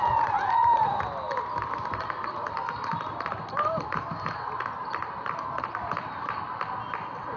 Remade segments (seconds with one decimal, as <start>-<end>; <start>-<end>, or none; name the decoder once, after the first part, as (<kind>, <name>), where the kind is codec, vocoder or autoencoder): 0.0-1.0 (vocoder, Vocos)

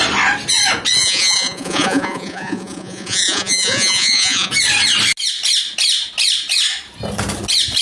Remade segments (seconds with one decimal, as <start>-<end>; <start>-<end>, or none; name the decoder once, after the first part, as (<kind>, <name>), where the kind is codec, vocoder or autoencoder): 1.0-4.5 (vocoder, Vocos)

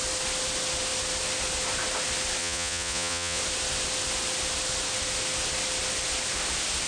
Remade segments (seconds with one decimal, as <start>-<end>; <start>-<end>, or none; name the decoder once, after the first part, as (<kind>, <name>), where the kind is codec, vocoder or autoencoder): 2.4-3.4 (vocoder, Vocos)

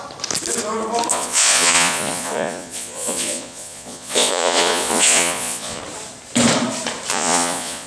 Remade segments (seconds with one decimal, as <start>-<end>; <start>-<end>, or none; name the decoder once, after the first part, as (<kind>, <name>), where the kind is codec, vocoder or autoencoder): 1.1-5.8 (vocoder, Vocos); 7.1-7.9